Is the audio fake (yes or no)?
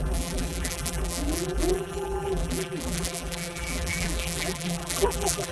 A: yes